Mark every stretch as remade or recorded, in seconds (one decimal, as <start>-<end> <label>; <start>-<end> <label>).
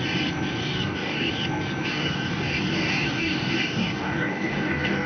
0.0-0.6 recorded; 0.6-1.3 remade; 1.3-1.9 recorded; 1.9-5.1 remade